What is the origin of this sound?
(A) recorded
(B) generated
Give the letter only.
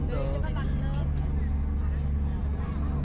A